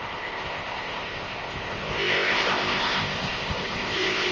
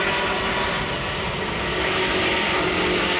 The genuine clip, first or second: second